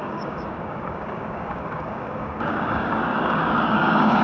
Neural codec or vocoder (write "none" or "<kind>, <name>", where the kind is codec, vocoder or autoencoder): codec, DAC